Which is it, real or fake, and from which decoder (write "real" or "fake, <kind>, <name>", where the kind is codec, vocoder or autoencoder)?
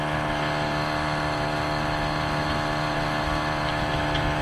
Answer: real